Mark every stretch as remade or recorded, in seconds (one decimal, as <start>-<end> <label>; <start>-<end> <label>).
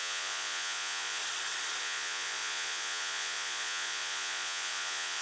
0.0-1.2 remade; 1.2-1.8 recorded; 1.8-5.2 remade